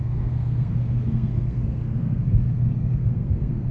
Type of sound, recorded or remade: remade